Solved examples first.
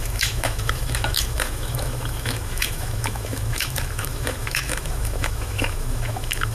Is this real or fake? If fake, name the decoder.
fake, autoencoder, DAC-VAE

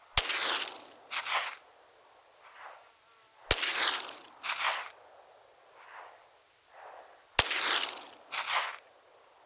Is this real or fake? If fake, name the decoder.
real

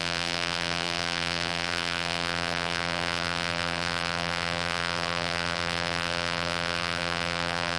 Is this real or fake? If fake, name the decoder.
fake, vocoder, BigVGAN v2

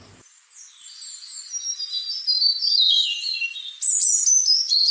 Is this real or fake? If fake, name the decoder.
real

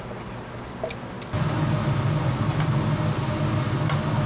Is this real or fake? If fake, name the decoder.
real